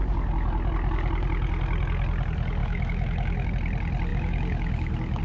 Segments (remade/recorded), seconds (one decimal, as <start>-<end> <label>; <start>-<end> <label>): 0.0-2.6 recorded; 2.6-3.5 remade; 3.5-4.1 recorded; 4.1-5.2 remade